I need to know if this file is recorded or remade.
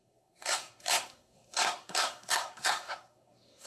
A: remade